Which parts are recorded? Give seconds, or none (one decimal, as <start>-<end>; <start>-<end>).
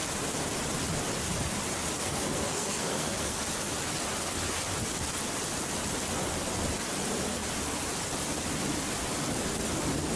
0.0-2.0; 3.4-10.2